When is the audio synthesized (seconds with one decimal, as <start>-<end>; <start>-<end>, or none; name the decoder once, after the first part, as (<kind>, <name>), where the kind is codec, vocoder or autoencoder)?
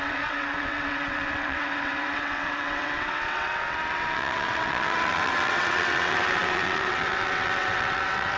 0.0-8.4 (vocoder, WaveNeXt)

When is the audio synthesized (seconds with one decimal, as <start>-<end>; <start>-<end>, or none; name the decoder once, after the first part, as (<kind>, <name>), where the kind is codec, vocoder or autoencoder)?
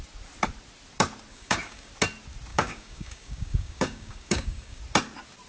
1.3-1.9 (codec, DAC); 2.5-4.8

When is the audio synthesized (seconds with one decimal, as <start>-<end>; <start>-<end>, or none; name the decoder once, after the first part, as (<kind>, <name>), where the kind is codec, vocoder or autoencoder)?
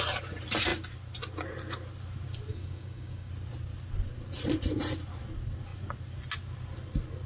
2.5-3.3 (codec, DAC)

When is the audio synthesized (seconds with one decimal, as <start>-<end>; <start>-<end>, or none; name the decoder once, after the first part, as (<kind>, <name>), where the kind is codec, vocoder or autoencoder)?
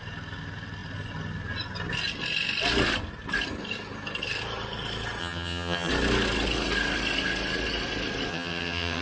5.2-5.9 (vocoder, HiFi-GAN); 8.3-9.0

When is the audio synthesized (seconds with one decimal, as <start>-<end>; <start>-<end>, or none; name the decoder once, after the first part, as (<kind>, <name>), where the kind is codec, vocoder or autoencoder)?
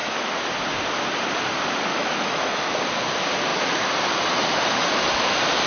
0.0-0.5 (autoencoder, DAC-VAE); 1.9-2.8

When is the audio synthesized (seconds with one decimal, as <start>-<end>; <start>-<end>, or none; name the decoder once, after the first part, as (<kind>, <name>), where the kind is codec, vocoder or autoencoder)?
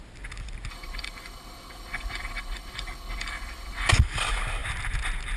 0.7-3.9 (codec, HILCodec)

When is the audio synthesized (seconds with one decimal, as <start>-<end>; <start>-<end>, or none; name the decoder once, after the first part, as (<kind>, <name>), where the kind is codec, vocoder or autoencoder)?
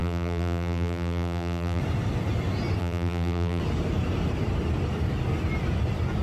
0.0-1.8 (vocoder, BigVGAN v2); 2.8-3.6